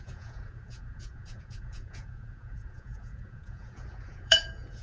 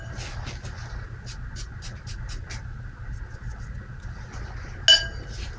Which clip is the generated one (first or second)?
first